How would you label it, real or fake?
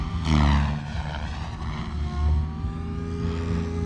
real